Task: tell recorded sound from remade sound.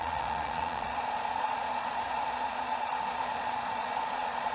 remade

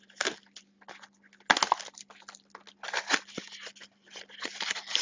recorded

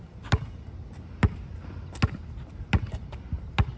recorded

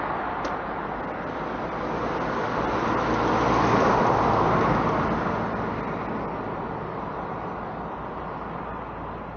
recorded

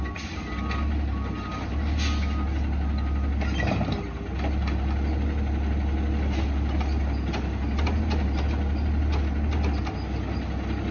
recorded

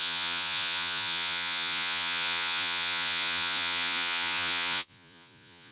remade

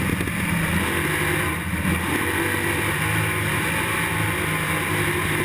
recorded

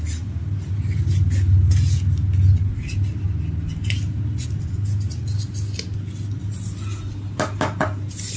recorded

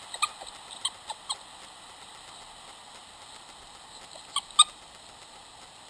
recorded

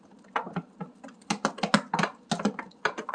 recorded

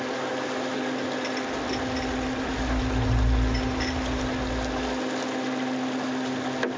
recorded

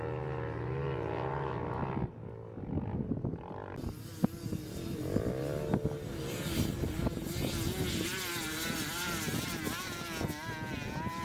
recorded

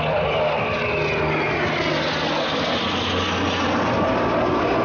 recorded